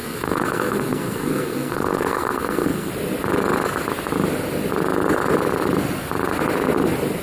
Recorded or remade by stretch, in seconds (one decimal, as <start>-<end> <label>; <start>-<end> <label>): 0.0-2.9 remade; 2.9-7.2 recorded